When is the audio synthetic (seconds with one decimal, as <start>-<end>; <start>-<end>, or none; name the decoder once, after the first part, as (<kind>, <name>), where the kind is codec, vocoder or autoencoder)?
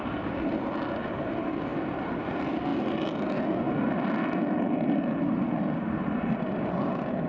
none